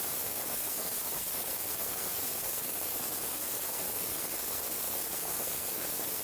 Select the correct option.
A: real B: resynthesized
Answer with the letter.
B